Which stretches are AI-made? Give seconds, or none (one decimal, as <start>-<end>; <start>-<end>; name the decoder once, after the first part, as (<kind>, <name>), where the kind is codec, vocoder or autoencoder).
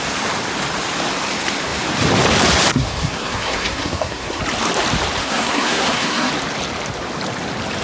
2.7-4.4 (codec, SNAC); 5.2-6.3